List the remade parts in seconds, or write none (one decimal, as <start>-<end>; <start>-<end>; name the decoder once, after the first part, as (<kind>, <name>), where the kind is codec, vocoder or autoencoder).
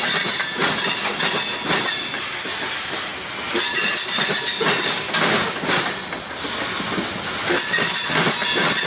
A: none